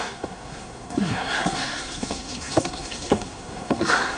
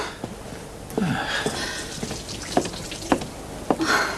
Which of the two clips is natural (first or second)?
second